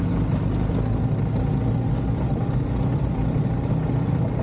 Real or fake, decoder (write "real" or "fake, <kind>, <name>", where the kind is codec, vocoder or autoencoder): real